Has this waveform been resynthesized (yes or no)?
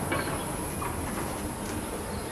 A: no